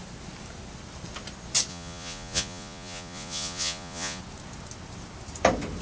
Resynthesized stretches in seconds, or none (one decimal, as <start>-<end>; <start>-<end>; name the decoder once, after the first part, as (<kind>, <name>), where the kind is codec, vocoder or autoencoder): 1.7-4.2 (vocoder, Vocos)